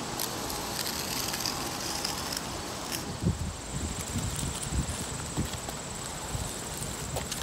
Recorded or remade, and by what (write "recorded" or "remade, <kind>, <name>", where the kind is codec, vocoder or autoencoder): recorded